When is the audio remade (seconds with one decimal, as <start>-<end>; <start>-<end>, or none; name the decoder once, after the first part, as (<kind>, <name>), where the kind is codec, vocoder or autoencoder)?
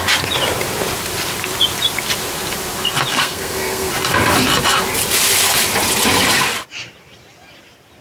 3.1-3.9 (codec, SNAC)